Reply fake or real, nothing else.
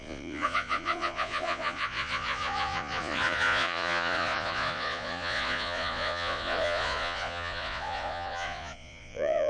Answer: fake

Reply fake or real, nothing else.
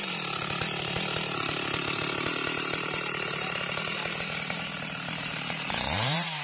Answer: fake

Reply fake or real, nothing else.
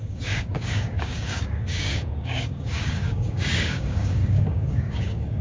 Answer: fake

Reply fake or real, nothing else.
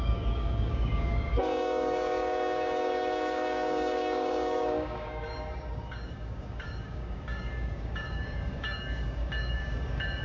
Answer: fake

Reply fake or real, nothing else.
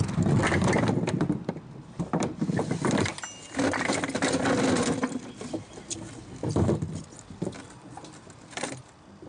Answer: real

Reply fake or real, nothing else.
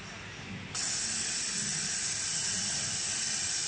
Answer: real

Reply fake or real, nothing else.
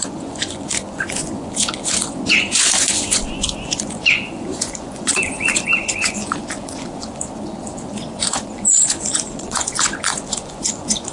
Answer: fake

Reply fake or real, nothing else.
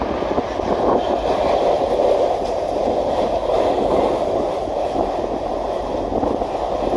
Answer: real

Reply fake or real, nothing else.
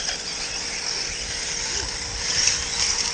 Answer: real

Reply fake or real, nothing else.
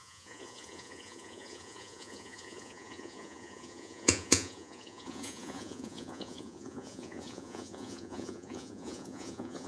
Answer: fake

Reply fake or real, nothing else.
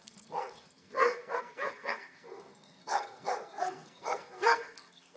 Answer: fake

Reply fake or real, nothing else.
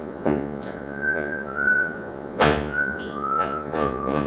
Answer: fake